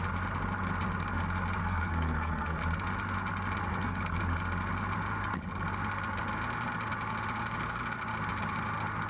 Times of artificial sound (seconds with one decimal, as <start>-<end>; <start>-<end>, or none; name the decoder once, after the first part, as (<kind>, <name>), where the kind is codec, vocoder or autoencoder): 1.6-2.6 (codec, SNAC); 3.7-4.2